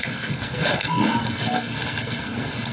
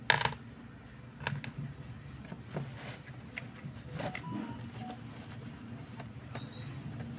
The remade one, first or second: first